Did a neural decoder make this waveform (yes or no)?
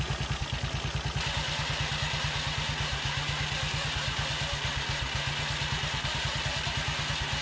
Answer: no